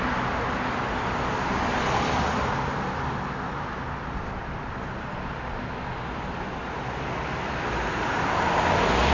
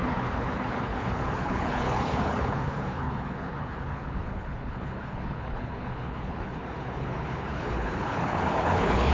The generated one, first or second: second